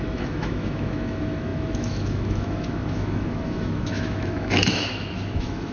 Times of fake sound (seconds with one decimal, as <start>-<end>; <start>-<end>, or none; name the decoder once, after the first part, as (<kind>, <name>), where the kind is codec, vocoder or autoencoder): 0.0-5.7 (autoencoder, DAC-VAE)